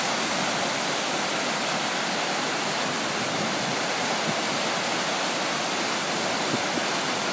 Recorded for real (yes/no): yes